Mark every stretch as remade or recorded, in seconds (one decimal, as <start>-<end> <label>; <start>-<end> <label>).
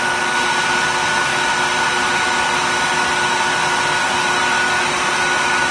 0.0-5.7 recorded